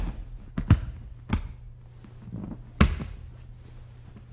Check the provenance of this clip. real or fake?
real